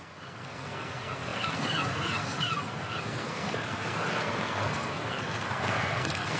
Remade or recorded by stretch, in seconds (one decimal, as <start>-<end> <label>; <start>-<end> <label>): 0.0-6.4 remade